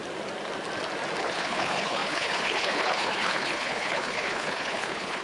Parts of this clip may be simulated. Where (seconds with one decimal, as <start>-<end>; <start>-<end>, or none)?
1.2-5.2